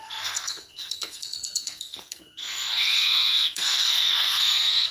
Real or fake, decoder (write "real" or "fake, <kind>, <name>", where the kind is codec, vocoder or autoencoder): fake, codec, SNAC